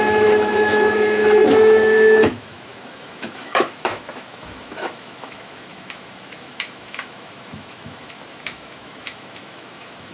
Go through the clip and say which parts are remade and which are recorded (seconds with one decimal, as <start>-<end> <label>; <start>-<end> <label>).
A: 0.0-10.1 remade